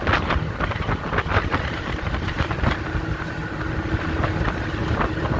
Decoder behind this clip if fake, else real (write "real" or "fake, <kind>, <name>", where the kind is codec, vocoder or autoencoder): real